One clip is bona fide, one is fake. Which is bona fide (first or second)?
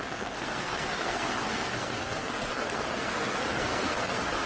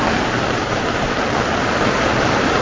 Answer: second